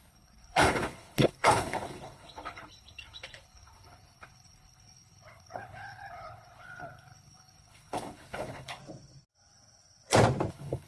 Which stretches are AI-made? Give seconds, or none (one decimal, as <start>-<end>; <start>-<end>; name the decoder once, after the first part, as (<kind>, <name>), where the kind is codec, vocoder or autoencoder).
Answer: 0.0-8.8 (codec, HILCodec); 10.5-10.9